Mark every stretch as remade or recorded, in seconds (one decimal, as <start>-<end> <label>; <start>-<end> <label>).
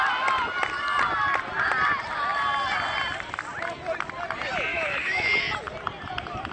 0.0-4.7 recorded; 4.7-5.4 remade; 5.4-6.5 recorded